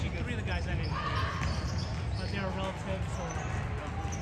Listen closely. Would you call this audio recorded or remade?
recorded